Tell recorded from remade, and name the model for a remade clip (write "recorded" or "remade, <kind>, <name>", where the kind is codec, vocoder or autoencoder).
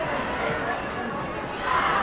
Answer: recorded